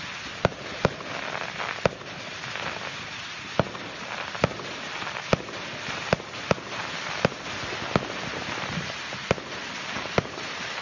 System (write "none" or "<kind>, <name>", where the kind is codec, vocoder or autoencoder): none